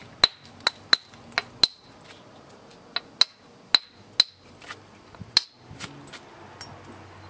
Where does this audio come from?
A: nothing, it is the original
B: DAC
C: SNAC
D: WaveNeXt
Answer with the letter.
A